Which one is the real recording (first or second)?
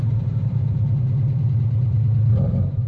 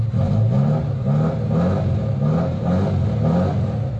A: second